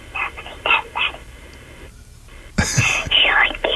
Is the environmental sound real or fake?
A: real